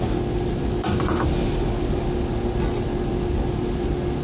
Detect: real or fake real